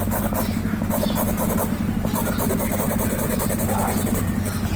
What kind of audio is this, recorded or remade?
recorded